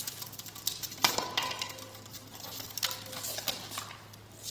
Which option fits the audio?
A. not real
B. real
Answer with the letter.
B